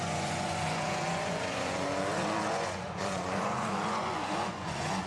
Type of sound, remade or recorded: remade